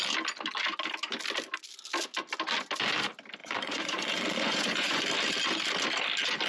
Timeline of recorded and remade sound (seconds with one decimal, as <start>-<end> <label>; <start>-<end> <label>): 0.0-3.4 recorded; 3.4-5.0 remade; 5.0-6.5 recorded